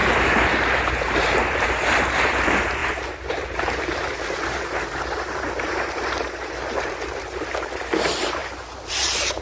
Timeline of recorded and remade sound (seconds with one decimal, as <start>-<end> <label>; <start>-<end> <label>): 0.0-9.4 remade